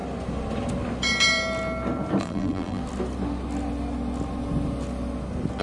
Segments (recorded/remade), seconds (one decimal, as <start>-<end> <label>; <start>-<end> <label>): 0.0-2.2 recorded; 2.2-2.8 remade; 2.8-5.6 recorded